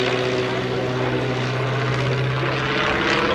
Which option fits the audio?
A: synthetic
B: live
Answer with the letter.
B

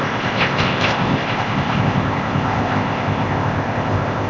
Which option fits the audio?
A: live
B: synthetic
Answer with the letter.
B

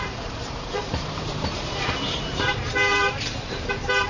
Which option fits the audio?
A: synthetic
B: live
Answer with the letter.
A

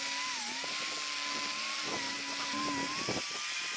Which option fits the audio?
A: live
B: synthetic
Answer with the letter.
A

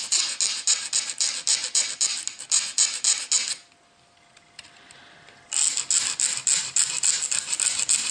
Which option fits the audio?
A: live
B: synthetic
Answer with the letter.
A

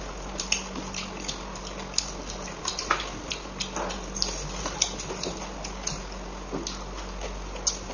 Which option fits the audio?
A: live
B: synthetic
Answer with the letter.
A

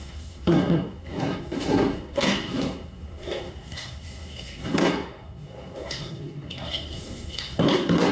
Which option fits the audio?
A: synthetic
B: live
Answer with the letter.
A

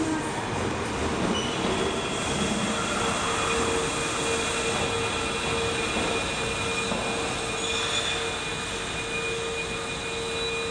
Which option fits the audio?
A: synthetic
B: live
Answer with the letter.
B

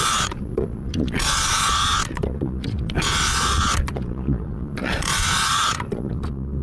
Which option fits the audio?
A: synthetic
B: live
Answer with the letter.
A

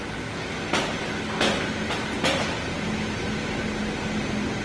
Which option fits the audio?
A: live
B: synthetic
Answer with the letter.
A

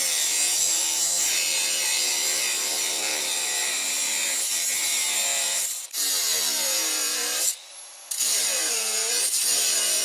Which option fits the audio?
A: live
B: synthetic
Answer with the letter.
B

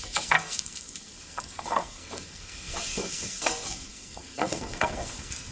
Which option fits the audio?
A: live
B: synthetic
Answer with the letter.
B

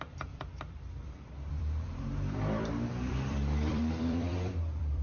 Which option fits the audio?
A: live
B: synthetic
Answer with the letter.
B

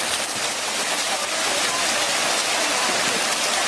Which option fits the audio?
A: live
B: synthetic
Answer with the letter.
A